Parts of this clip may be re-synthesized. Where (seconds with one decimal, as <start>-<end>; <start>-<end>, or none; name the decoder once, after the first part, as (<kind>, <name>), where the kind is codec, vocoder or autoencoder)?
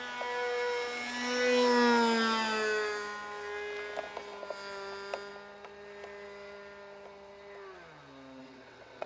8.4-9.1 (vocoder, WaveNeXt)